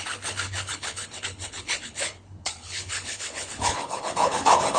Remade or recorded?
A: remade